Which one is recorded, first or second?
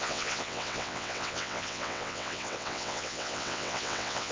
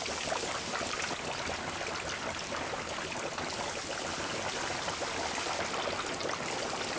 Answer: second